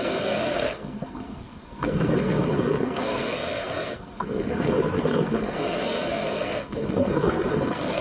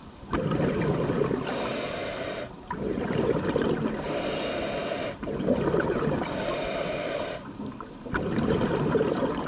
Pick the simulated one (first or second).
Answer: first